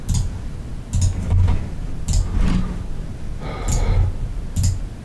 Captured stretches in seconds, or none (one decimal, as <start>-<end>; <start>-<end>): 0.0-5.0